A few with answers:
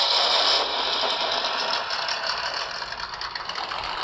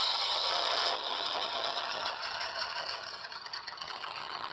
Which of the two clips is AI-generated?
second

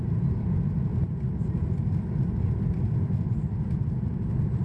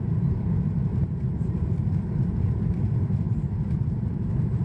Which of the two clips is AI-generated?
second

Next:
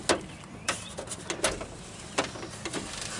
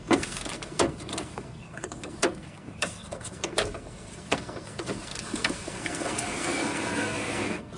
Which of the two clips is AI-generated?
second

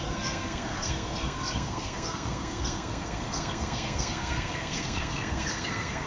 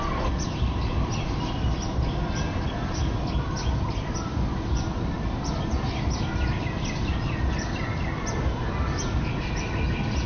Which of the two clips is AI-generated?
first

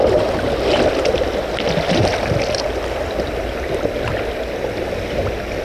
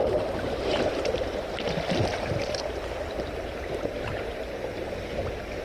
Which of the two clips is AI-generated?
second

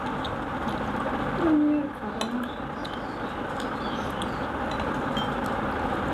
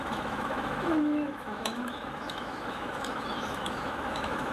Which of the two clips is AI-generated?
second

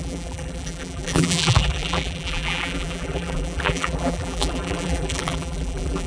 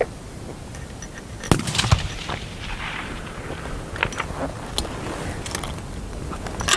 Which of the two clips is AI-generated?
first